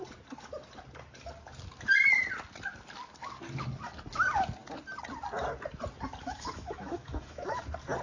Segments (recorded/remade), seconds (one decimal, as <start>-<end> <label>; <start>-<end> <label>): 0.0-6.2 recorded; 6.2-7.6 remade; 7.6-8.0 recorded